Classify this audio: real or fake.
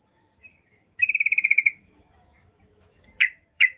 fake